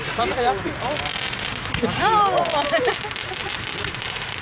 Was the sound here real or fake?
fake